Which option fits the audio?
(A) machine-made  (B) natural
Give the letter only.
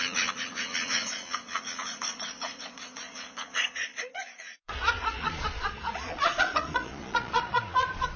A